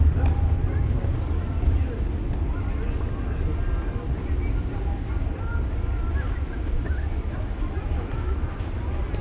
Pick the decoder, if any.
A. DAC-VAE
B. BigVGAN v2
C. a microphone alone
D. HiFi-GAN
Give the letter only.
C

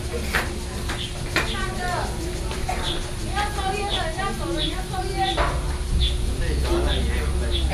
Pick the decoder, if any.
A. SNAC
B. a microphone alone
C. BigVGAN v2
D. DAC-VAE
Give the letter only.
B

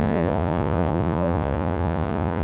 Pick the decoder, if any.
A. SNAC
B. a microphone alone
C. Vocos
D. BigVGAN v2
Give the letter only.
C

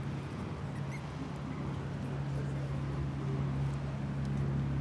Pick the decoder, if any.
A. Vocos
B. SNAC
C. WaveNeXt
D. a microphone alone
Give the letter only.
D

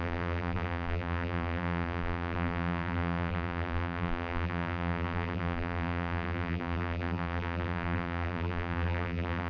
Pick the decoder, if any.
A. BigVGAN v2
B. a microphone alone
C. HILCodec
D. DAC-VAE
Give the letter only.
A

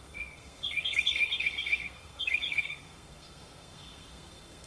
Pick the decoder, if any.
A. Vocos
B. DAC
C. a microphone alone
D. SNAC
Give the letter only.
D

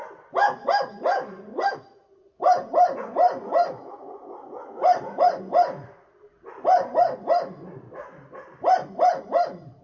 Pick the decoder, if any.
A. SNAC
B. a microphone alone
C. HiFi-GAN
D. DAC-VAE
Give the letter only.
B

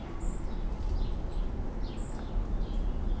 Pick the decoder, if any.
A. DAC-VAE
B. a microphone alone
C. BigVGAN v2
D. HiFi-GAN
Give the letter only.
B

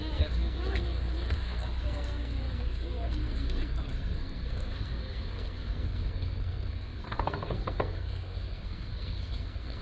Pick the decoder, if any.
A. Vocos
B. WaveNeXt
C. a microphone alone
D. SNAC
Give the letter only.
D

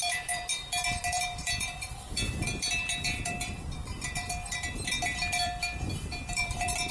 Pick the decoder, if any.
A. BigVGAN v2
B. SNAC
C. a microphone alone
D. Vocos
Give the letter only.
A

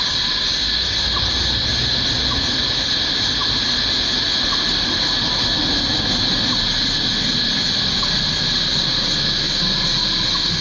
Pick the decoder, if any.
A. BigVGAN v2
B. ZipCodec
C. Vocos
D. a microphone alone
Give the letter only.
D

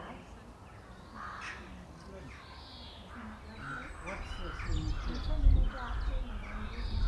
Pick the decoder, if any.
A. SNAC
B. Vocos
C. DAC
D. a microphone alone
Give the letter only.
D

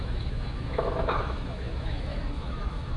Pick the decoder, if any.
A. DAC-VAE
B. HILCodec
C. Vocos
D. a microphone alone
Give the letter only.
A